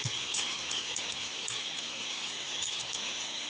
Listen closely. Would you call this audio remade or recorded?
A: remade